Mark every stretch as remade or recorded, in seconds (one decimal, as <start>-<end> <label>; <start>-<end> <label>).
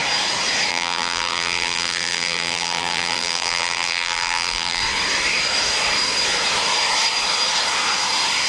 0.0-0.7 recorded; 0.7-4.8 remade; 4.8-8.5 recorded